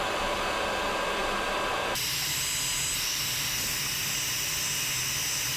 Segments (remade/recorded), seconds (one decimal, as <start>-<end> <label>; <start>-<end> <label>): 0.0-5.6 recorded